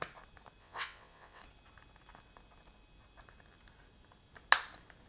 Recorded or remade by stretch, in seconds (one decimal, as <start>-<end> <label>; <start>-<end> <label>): 0.0-0.6 recorded; 0.6-1.4 remade; 1.4-5.1 recorded